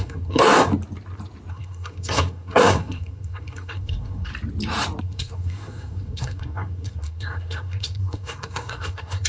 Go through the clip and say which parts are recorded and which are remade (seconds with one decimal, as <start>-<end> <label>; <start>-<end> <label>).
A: 0.0-0.7 remade; 0.7-1.5 recorded; 1.5-4.3 remade; 4.3-5.0 recorded; 5.0-9.3 remade